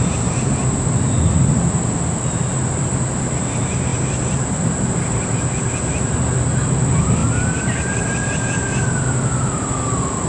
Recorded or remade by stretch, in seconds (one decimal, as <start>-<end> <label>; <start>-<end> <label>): 0.0-10.3 recorded

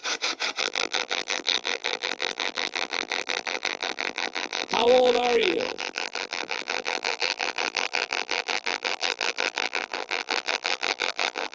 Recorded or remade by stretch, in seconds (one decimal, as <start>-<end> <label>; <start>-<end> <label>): 0.0-0.6 recorded; 0.6-11.5 remade

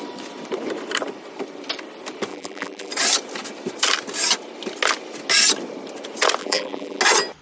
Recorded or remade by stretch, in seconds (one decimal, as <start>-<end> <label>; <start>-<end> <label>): 0.0-2.3 recorded; 2.3-2.9 remade; 2.9-6.4 recorded; 6.4-7.0 remade; 7.0-7.4 recorded

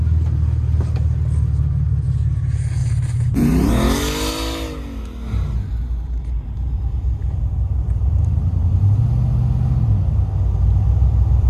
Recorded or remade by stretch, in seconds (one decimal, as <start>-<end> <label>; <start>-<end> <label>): 0.0-2.8 recorded; 2.8-3.7 remade; 3.7-6.6 recorded; 6.6-9.0 remade; 9.0-11.5 recorded

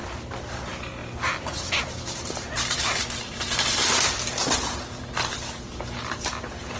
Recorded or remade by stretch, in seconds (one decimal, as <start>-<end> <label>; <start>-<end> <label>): 0.0-1.0 recorded; 1.0-5.1 remade; 5.1-6.8 recorded

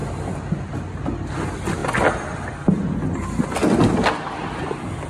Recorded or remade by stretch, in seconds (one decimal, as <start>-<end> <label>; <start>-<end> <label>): 0.0-5.1 recorded